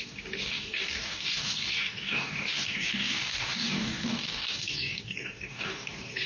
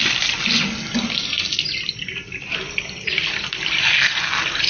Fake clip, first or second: first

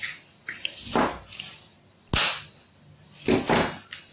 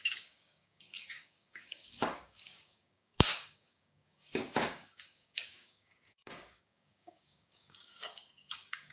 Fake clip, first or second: second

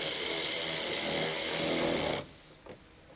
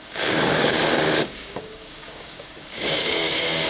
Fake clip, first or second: second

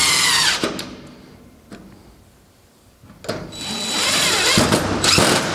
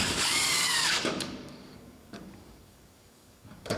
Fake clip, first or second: second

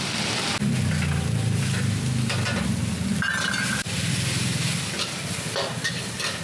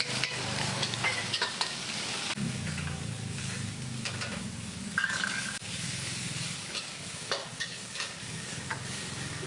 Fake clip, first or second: second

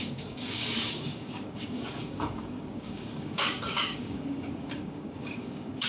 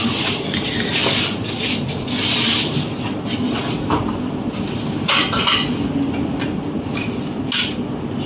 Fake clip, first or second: first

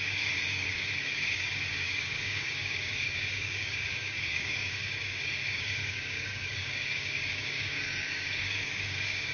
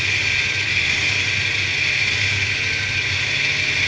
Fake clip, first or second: first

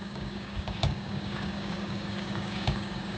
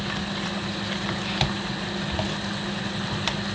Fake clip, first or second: first